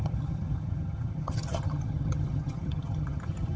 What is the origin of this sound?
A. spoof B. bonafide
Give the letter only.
A